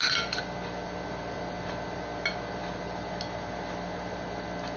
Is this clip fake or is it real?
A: real